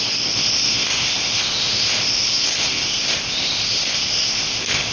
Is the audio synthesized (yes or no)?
yes